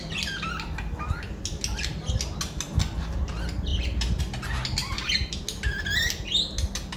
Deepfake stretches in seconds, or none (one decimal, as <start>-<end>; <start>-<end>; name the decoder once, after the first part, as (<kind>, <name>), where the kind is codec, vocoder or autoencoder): 4.8-5.4 (vocoder, BigVGAN v2)